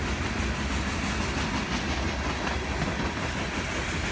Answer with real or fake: real